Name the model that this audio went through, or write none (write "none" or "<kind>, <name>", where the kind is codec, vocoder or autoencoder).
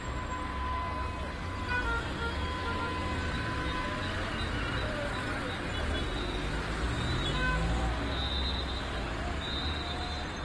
none